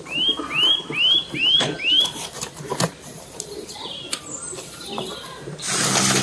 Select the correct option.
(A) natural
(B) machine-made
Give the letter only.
A